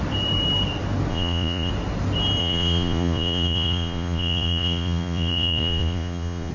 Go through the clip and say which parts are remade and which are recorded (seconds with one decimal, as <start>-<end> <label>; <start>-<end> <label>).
0.0-1.1 recorded; 1.1-1.7 remade; 1.7-2.4 recorded; 2.4-6.5 remade